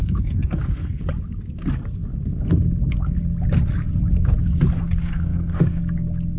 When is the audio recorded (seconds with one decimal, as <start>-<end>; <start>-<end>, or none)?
1.0-5.0; 5.8-6.4